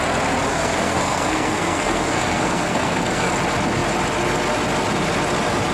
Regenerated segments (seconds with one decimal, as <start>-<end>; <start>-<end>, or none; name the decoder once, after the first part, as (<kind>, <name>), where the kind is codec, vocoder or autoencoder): 0.5-3.3 (codec, SNAC)